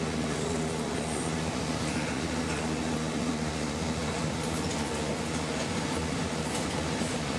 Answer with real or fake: fake